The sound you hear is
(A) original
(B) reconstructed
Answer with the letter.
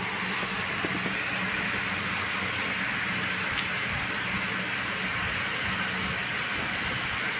A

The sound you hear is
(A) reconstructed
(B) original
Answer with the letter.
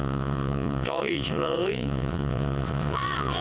A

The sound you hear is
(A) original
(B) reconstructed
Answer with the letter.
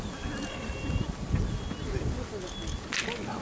A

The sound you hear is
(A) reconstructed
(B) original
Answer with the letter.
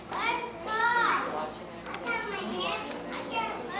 B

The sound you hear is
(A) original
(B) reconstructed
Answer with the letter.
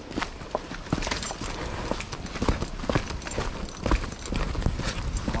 A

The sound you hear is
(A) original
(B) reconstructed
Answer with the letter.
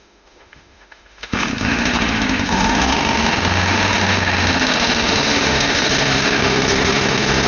B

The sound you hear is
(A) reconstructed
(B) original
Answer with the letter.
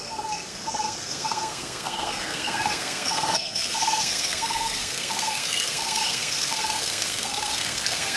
A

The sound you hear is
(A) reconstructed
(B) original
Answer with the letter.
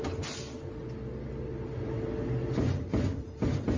B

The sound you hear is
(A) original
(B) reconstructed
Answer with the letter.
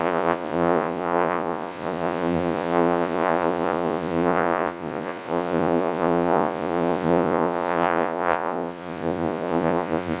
B